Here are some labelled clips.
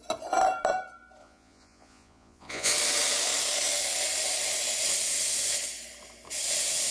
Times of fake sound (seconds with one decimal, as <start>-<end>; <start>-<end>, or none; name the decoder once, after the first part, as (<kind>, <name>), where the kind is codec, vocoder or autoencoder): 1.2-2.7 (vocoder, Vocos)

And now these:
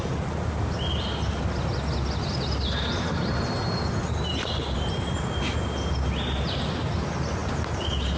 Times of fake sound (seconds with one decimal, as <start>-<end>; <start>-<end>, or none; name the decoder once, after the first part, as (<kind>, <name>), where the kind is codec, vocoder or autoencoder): 4.3-5.1 (vocoder, BigVGAN v2)

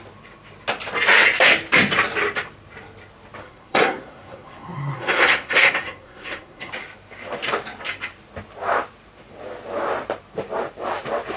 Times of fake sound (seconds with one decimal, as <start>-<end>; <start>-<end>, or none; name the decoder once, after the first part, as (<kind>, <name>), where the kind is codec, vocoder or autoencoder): 3.4-6.7 (codec, SNAC)

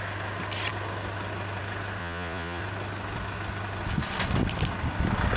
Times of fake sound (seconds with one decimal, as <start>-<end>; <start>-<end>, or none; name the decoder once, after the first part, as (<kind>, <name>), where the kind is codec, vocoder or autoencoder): 2.0-2.6 (vocoder, Vocos)

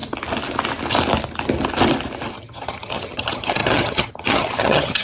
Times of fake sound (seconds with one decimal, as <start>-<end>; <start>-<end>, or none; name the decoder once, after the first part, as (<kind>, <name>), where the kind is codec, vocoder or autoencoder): 2.3-5.0 (vocoder, HiFi-GAN)

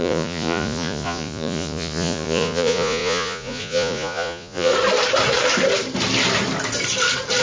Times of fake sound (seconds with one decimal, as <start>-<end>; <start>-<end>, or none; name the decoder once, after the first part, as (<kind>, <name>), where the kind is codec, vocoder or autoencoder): 0.0-4.7 (vocoder, Vocos)

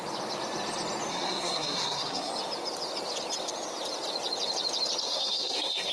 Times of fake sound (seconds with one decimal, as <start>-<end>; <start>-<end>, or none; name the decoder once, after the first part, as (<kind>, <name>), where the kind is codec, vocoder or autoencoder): 1.1-2.3 (codec, SNAC); 5.0-5.9

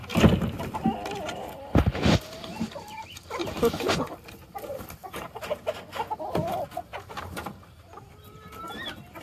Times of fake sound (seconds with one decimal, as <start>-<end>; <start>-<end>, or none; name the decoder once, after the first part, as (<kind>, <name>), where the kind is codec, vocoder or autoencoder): 5.0-5.8 (vocoder, BigVGAN v2); 6.9-8.6